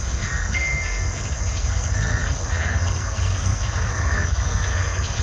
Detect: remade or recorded remade